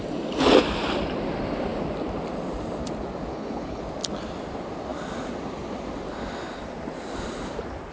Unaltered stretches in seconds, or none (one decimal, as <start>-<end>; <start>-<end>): 0.0-3.3; 3.8-7.9